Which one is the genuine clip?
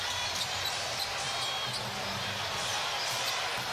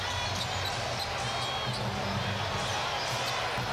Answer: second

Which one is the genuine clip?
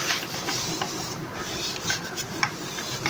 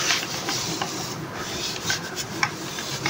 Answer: second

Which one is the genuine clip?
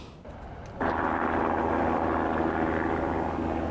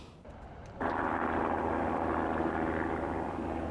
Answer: first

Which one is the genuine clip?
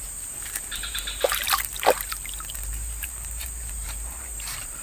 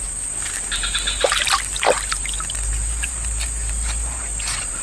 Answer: second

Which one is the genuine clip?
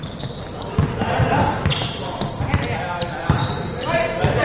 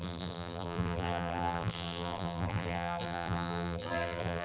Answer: first